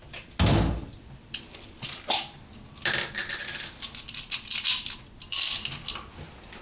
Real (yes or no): yes